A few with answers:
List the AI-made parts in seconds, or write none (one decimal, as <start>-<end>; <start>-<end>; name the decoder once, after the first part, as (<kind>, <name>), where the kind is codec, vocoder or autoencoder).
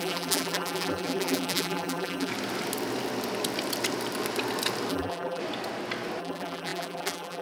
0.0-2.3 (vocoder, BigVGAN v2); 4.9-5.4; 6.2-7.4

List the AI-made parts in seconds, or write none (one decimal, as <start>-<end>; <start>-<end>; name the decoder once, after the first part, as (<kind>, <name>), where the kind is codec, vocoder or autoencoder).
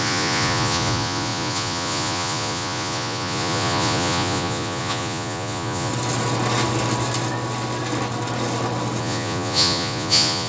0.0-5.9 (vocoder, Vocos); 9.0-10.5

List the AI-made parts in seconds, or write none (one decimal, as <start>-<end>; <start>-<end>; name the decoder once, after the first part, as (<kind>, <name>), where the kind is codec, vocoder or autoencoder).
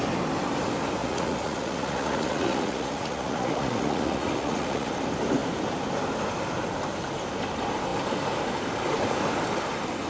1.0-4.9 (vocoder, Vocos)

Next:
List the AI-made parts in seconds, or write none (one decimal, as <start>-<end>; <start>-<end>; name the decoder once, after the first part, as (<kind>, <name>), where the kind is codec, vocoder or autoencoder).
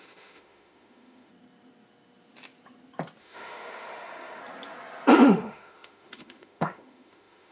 0.0-1.3 (autoencoder, DAC-VAE); 3.2-4.4; 5.2-7.5